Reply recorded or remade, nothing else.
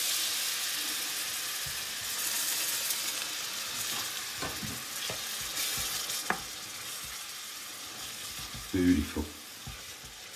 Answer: recorded